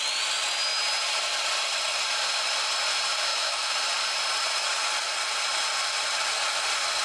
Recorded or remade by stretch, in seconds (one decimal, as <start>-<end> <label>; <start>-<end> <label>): 0.0-3.3 recorded; 3.3-3.8 remade; 3.8-7.0 recorded

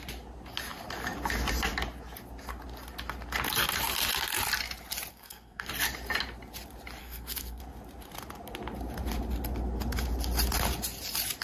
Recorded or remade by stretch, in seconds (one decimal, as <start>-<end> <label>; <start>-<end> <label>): 0.0-5.1 recorded; 5.1-5.7 remade; 5.7-7.0 recorded; 7.0-7.6 remade; 7.6-11.4 recorded

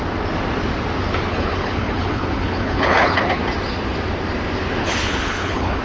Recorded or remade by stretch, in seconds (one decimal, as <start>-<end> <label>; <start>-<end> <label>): 0.0-1.3 recorded; 1.3-3.4 remade; 3.4-4.8 recorded; 4.8-5.8 remade

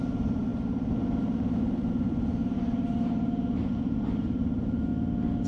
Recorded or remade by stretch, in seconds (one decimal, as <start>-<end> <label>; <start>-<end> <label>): 0.0-0.5 remade; 0.5-1.2 recorded; 1.2-4.9 remade; 4.9-5.5 recorded

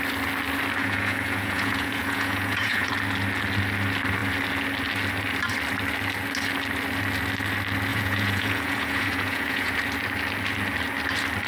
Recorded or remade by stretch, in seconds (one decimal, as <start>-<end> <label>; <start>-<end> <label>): 0.0-0.8 recorded; 0.8-2.9 remade; 2.9-7.9 recorded; 7.9-9.7 remade; 9.7-11.5 recorded

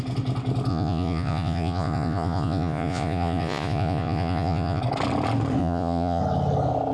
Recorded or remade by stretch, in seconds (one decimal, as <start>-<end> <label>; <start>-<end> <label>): 0.0-0.7 recorded; 0.7-4.8 remade; 4.8-5.6 recorded; 5.6-6.2 remade; 6.2-6.9 recorded